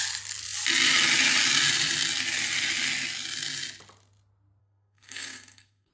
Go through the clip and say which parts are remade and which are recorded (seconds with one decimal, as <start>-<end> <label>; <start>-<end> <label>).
0.0-4.6 recorded; 4.6-5.9 remade